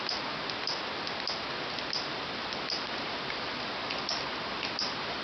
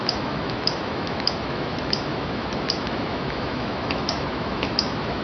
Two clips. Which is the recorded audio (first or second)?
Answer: first